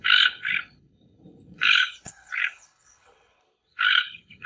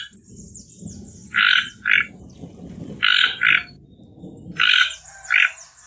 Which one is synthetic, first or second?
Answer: first